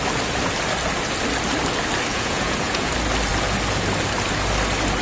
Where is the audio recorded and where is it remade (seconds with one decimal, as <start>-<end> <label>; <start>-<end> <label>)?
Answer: 0.0-2.1 recorded; 2.1-2.9 remade; 2.9-5.0 recorded